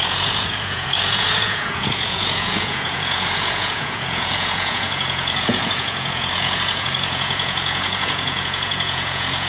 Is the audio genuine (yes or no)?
no